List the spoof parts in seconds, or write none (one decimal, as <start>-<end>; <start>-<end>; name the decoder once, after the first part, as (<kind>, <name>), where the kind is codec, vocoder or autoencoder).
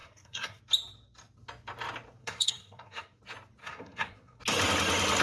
0.0-0.6 (codec, SNAC); 2.2-3.2; 3.6-4.4